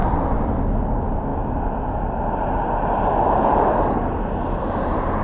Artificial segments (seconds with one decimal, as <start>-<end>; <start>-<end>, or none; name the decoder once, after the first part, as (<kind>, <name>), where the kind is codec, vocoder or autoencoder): 0.0-0.9 (vocoder, BigVGAN v2)

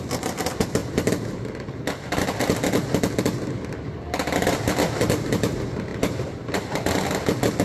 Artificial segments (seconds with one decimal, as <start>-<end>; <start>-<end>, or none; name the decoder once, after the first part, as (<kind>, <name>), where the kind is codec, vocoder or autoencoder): 5.9-6.9 (vocoder, BigVGAN v2)

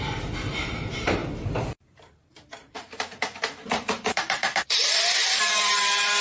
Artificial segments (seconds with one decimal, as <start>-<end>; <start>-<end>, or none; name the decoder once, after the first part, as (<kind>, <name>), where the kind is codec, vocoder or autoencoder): 0.0-6.2 (vocoder, BigVGAN v2)

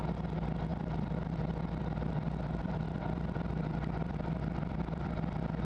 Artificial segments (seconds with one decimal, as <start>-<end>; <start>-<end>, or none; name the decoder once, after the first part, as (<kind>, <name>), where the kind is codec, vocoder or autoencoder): 0.0-5.6 (vocoder, BigVGAN v2)

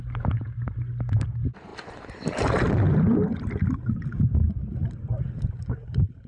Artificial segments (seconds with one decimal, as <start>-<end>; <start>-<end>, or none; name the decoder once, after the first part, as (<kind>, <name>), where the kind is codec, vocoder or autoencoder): 1.7-3.7 (vocoder, BigVGAN v2)

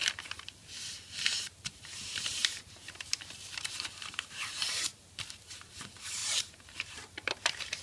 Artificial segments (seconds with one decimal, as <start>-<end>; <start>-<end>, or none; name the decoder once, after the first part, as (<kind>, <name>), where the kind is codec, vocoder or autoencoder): 0.0-0.6 (vocoder, BigVGAN v2); 1.1-7.8